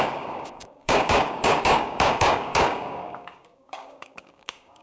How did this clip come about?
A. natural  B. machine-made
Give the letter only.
B